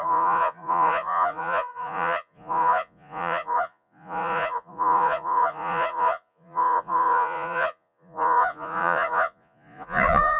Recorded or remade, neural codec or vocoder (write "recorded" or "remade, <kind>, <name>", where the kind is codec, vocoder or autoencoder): remade, vocoder, Vocos